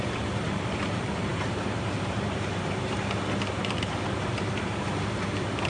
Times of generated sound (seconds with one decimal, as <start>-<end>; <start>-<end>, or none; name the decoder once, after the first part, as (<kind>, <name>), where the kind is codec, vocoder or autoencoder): 1.3-2.9 (vocoder, BigVGAN v2)